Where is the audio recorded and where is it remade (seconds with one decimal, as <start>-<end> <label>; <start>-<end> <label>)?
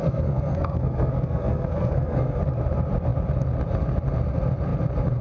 0.0-2.4 remade; 2.4-5.2 recorded